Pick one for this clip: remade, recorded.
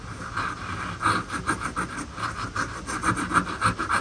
recorded